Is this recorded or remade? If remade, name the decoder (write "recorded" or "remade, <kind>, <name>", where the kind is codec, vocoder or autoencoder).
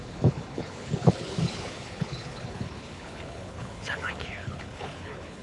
remade, codec, HILCodec